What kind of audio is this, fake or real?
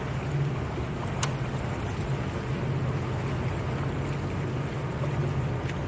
real